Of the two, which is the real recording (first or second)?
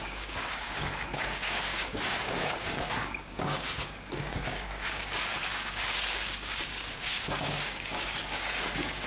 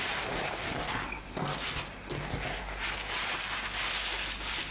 second